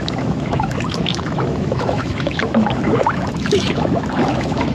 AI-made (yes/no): yes